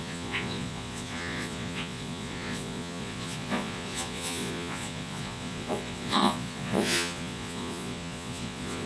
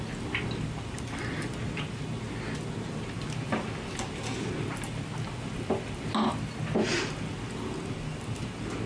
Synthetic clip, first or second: first